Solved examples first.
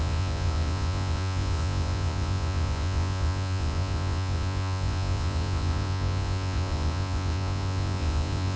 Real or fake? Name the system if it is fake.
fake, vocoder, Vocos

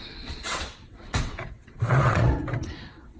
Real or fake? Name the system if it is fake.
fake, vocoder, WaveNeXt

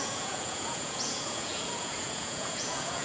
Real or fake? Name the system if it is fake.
fake, vocoder, Vocos